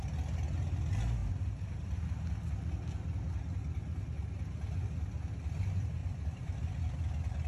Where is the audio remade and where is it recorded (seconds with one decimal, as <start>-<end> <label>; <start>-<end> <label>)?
0.0-1.2 recorded; 1.2-2.0 remade; 2.0-6.0 recorded; 6.0-6.7 remade; 6.7-7.5 recorded